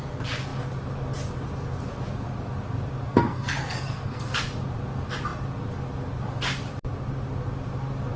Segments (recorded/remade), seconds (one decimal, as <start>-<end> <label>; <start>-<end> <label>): 0.0-3.1 recorded; 3.1-4.4 remade; 4.4-8.2 recorded